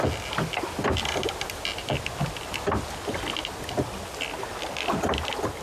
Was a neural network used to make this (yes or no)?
no